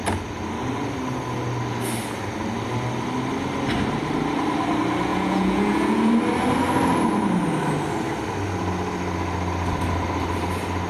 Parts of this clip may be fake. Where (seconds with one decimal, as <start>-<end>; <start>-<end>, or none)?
5.1-6.1

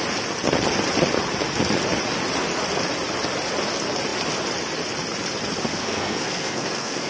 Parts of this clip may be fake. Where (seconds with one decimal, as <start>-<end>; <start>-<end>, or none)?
5.7-7.1

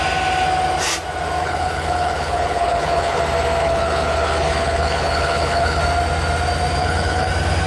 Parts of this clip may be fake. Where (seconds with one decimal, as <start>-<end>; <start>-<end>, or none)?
1.4-3.2; 3.6-5.8; 6.8-7.3